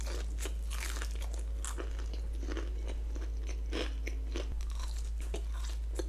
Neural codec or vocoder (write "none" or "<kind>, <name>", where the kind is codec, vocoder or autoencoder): none